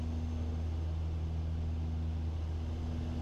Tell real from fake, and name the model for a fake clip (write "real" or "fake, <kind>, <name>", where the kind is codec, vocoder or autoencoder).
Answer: real